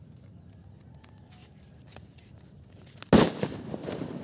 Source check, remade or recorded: recorded